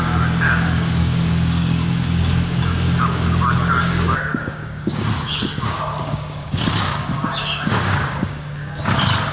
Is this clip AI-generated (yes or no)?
yes